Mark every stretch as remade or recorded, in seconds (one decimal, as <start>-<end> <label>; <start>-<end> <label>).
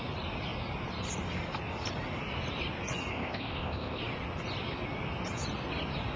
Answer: 0.0-3.1 recorded; 3.1-4.0 remade; 4.0-6.2 recorded